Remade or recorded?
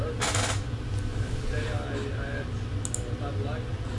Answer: recorded